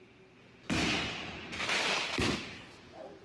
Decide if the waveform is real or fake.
fake